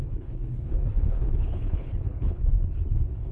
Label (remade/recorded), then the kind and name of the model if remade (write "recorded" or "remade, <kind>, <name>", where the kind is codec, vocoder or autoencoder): remade, codec, HILCodec